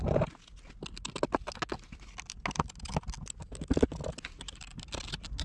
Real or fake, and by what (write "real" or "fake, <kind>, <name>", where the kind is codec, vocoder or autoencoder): real